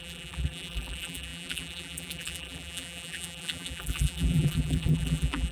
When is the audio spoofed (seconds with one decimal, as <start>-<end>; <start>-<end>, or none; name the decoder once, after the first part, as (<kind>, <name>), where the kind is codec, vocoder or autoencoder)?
0.0-5.5 (vocoder, BigVGAN v2)